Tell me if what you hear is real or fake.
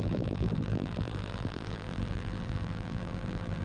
fake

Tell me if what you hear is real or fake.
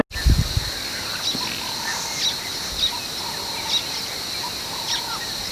real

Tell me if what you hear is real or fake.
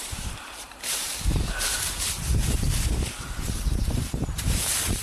fake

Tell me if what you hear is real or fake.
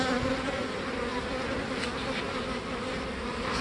real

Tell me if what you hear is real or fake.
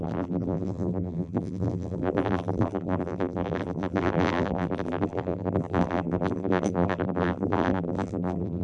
fake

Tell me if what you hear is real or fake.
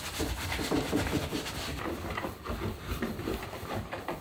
fake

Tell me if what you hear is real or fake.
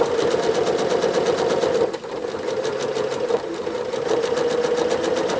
real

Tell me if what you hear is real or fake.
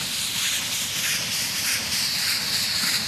real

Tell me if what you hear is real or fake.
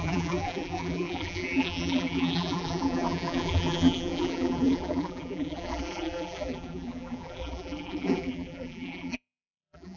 fake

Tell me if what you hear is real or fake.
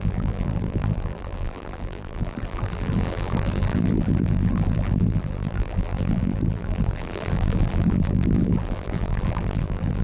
fake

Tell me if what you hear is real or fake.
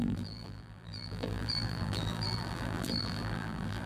fake